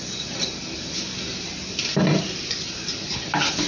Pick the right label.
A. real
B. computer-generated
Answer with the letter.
A